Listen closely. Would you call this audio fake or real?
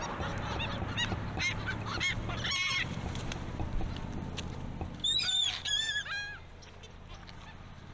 real